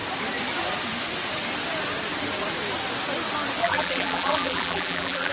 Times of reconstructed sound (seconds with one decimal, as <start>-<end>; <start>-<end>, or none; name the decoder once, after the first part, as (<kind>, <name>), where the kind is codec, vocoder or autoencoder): 3.6-5.3 (vocoder, BigVGAN v2)